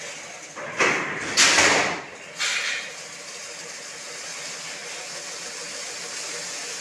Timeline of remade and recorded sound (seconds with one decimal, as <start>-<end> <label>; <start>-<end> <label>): 0.0-6.8 recorded